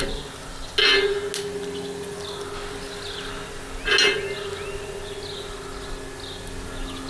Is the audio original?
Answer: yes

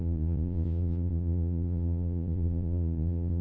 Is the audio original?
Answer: no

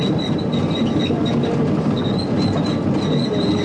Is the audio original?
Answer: yes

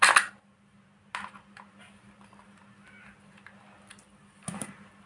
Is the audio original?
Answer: yes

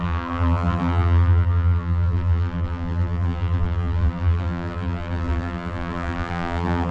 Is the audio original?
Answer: no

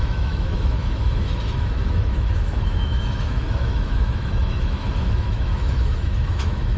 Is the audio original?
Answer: no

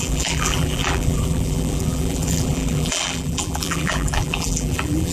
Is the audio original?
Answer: no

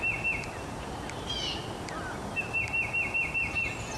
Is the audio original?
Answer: yes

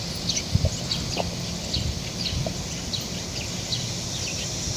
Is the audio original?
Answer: yes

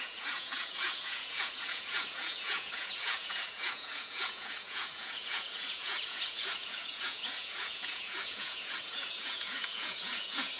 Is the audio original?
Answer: no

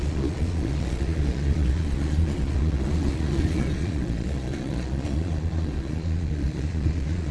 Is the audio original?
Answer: no